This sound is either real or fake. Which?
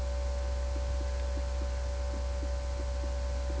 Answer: real